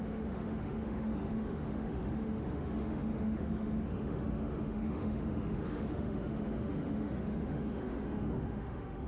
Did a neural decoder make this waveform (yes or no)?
yes